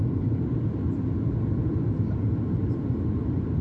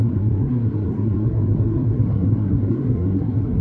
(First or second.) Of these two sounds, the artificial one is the second